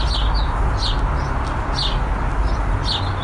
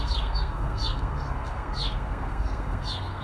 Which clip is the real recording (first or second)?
first